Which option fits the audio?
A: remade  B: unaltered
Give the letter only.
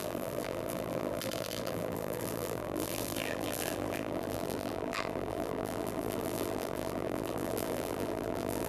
A